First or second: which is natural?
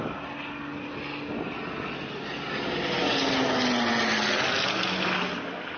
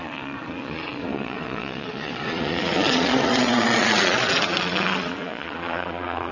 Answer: first